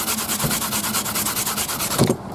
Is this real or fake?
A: real